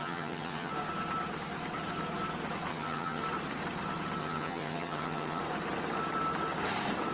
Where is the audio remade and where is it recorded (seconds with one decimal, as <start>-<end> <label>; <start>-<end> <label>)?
0.0-0.7 remade; 0.7-2.7 recorded; 2.7-3.2 remade; 3.2-4.2 recorded; 4.2-5.4 remade; 5.4-7.1 recorded